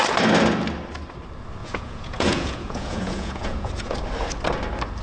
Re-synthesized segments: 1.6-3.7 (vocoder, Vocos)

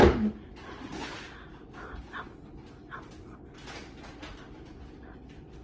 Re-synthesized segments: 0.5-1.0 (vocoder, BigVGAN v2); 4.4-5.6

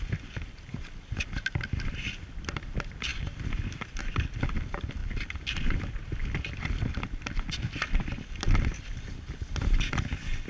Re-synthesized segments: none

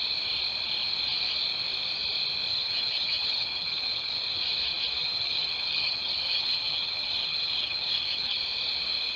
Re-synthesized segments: 2.5-4.4 (vocoder, HiFi-GAN); 5.0-8.4

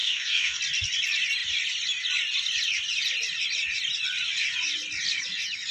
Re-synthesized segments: 0.0-0.6 (codec, DAC)

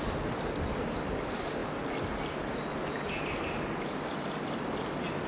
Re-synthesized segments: none